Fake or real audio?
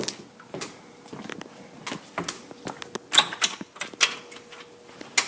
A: real